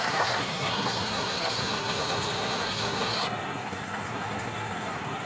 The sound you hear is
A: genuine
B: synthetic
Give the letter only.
B